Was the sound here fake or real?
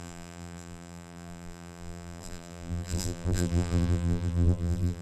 fake